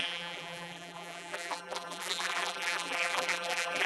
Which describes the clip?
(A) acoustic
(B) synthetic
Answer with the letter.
B